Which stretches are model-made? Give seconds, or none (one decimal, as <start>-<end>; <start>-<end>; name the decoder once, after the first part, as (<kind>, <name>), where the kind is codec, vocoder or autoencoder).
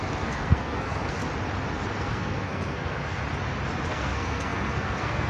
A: 0.0-1.2 (codec, SNAC); 2.0-3.2; 3.9-5.3